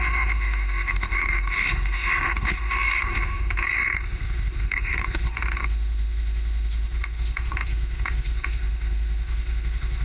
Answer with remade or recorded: remade